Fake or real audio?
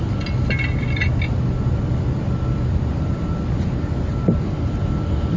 real